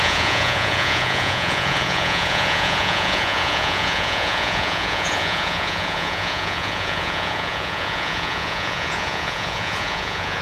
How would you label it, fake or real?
fake